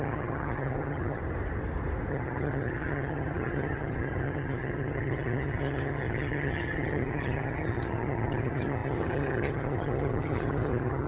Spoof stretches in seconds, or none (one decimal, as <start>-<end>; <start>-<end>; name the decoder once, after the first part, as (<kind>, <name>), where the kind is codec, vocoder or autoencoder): 0.0-1.2 (vocoder, HiFi-GAN); 2.1-11.1

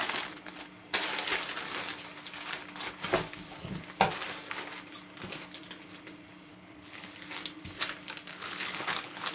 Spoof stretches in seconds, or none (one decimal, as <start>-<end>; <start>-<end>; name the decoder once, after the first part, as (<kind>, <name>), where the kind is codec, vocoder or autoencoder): 6.5-7.1 (codec, HILCodec); 8.3-9.3

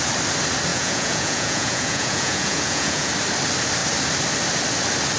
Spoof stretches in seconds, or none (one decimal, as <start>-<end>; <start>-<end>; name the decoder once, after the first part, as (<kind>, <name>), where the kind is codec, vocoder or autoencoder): 0.7-3.1 (vocoder, Vocos)

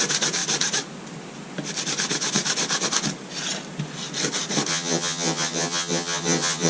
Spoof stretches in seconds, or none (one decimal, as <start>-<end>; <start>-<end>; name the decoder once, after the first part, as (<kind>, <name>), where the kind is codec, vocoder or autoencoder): 4.7-6.7 (vocoder, HiFi-GAN)

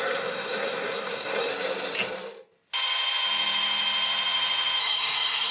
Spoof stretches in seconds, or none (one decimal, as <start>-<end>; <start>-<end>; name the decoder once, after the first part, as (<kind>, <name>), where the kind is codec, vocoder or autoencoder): 0.0-1.5 (codec, SNAC); 4.8-5.5